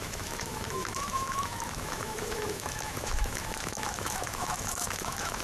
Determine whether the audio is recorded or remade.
remade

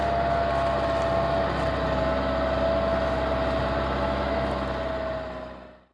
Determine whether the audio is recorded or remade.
recorded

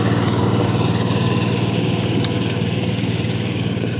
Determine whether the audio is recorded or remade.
remade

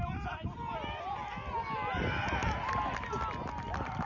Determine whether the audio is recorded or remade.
recorded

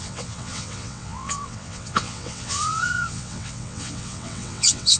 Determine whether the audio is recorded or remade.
remade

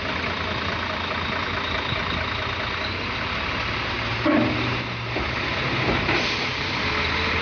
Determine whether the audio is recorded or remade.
recorded